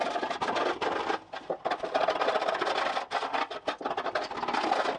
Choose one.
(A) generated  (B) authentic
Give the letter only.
B